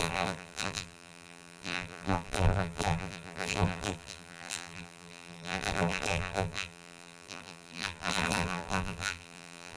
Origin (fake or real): fake